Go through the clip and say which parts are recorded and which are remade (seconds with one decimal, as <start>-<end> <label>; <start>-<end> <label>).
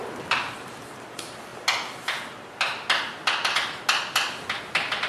0.0-5.1 recorded